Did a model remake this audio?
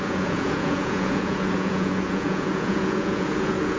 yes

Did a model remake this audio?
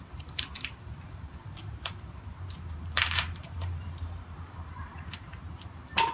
yes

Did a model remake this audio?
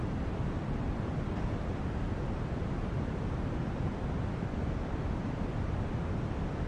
no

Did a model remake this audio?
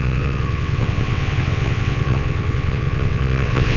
yes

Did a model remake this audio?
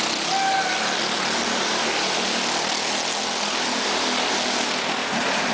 no